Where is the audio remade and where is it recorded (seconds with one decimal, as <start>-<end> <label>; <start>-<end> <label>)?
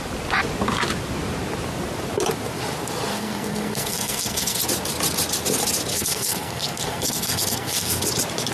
0.0-3.1 recorded; 3.1-4.6 remade; 4.6-5.9 recorded; 5.9-8.0 remade; 8.0-8.5 recorded